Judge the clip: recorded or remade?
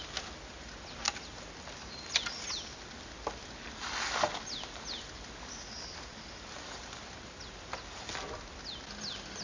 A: recorded